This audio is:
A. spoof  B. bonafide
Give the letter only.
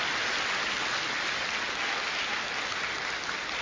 B